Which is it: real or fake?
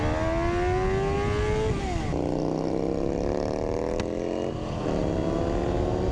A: real